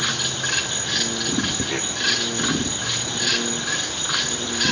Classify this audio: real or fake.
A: real